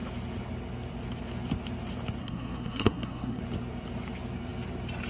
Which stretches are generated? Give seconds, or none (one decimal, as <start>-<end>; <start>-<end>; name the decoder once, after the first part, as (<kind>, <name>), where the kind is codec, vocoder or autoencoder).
2.2-3.4 (codec, SNAC)